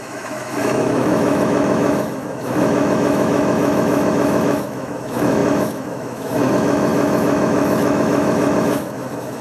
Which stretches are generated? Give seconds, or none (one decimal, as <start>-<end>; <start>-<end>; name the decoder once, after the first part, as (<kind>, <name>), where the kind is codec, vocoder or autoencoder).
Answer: 0.0-9.4 (autoencoder, DAC-VAE)